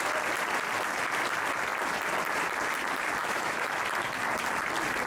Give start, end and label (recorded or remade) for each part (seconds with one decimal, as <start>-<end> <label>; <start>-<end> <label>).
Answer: 0.0-3.2 recorded; 3.2-3.8 remade; 3.8-5.1 recorded